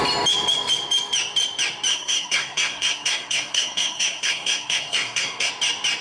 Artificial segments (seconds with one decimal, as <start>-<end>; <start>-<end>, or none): 1.9-5.5